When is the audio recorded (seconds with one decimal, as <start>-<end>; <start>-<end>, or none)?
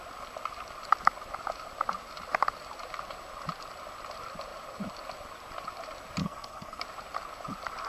0.0-6.2; 6.8-7.9